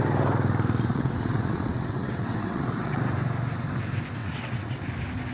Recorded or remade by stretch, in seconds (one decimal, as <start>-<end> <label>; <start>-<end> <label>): 0.0-0.9 recorded; 0.9-3.0 remade; 3.0-4.2 recorded; 4.2-4.8 remade; 4.8-5.3 recorded